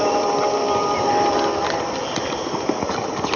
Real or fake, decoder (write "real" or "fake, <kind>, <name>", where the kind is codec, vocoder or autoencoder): real